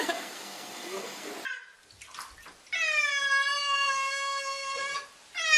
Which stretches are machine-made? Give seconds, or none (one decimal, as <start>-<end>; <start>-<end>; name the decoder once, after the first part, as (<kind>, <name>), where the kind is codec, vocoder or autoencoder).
0.0-1.3 (codec, SNAC); 3.6-4.9